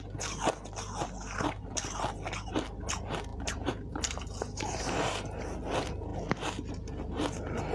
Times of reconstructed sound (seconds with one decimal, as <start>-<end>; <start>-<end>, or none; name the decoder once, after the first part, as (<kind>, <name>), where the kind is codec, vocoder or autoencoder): 3.3-5.4 (vocoder, BigVGAN v2)